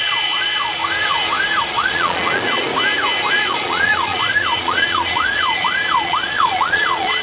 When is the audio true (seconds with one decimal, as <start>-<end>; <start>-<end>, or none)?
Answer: 0.8-1.6; 2.7-3.3

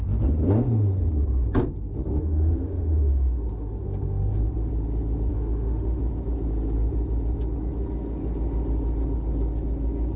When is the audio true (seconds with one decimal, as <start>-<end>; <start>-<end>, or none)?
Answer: 0.0-2.2; 4.7-5.3; 6.0-10.2

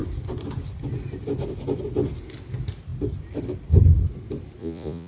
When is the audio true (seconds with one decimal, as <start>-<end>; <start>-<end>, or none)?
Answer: 0.0-4.6

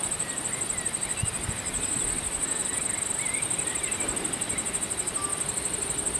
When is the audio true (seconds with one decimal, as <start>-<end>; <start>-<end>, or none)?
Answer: 1.5-2.6; 3.2-6.2

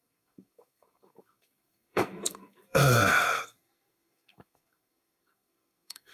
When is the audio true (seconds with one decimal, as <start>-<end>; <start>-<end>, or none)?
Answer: none